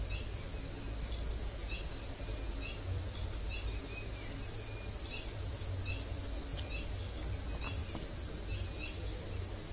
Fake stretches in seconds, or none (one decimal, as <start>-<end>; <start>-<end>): 1.4-2.8